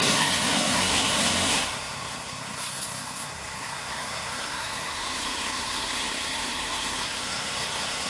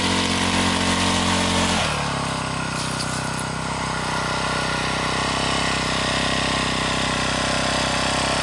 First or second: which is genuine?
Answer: second